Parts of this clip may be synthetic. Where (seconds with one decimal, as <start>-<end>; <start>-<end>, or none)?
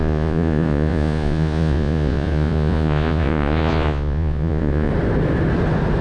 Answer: 0.0-4.9